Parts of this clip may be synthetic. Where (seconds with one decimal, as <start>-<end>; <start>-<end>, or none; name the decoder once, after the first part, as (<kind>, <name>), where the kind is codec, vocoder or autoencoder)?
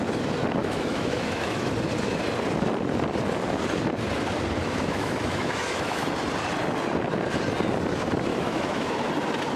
0.6-1.7 (autoencoder, DAC-VAE); 4.6-6.1; 8.3-9.1